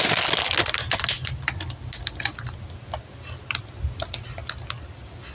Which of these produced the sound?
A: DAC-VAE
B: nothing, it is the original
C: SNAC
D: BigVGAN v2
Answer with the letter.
B